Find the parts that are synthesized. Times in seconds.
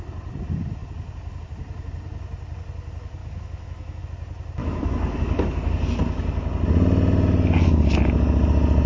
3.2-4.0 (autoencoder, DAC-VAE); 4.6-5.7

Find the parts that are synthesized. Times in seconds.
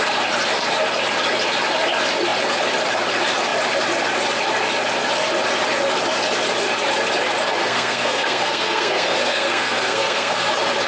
7.6-10.5 (codec, SNAC)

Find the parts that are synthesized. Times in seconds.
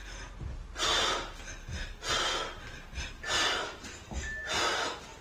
none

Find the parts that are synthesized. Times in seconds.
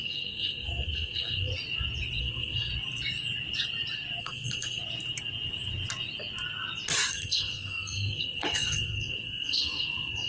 0.0-1.5 (codec, SNAC); 2.2-2.7; 4.2-4.8; 7.1-10.3